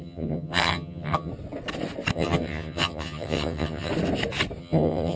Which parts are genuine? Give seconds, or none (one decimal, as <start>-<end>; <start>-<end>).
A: 1.3-2.1; 3.9-4.6